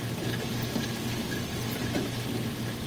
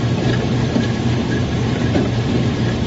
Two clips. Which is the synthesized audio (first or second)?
second